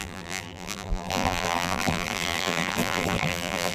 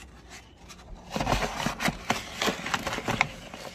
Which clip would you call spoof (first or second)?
first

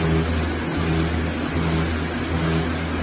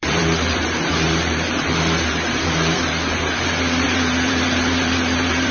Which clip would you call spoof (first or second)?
second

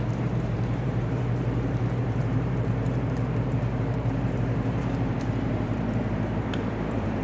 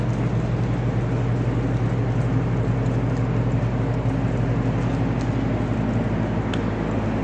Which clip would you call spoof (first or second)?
first